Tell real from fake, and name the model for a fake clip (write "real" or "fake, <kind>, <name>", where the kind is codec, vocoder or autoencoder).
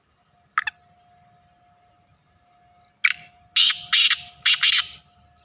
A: real